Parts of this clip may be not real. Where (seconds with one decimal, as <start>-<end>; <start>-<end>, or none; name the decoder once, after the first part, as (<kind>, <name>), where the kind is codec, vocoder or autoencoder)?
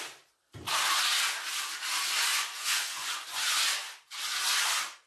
2.3-3.6 (vocoder, Vocos)